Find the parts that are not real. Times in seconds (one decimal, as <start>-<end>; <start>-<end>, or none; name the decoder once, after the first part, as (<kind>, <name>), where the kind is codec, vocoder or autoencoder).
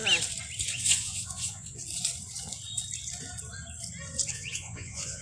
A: 0.7-1.8 (vocoder, Vocos); 4.3-5.2